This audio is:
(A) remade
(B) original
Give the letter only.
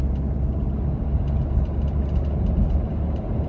B